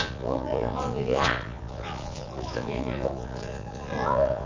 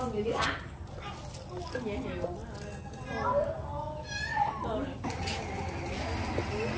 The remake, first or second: first